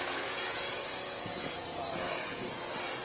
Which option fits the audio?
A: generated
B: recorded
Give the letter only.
A